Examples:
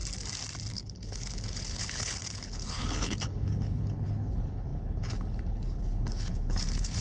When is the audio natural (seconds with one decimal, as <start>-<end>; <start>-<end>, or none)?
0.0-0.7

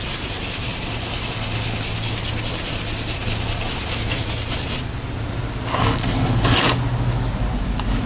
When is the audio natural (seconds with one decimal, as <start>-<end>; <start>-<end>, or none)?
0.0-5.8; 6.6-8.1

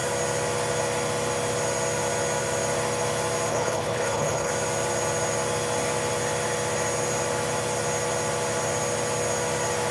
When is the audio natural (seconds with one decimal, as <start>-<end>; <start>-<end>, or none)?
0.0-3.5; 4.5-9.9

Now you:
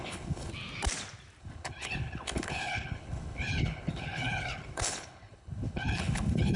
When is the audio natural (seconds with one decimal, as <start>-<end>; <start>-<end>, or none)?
0.5-1.4

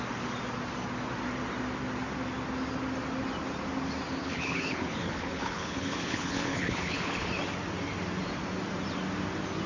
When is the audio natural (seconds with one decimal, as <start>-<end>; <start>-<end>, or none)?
0.0-4.2; 7.3-9.7

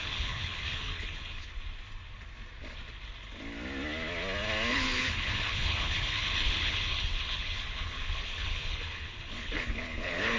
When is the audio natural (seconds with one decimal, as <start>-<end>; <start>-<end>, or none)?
1.5-4.7

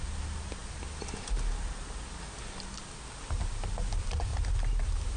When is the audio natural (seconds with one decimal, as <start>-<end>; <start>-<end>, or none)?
0.0-5.2

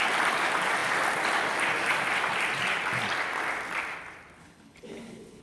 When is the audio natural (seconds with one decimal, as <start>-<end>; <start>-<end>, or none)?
0.0-4.4